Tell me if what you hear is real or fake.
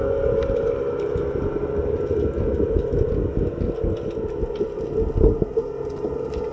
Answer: real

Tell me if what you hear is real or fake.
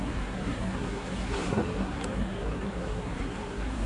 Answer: fake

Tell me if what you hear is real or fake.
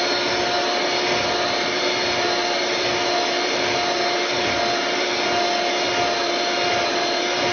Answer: real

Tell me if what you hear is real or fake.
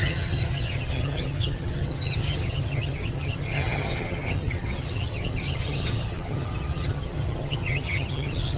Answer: fake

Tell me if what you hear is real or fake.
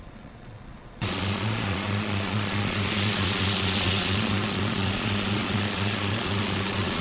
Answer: fake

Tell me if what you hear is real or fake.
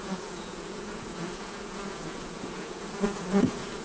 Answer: fake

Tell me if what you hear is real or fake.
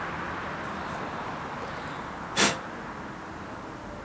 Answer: real